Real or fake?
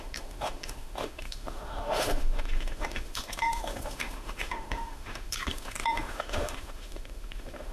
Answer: fake